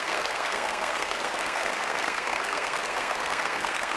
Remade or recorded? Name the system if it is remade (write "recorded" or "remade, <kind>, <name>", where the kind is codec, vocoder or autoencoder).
remade, codec, SNAC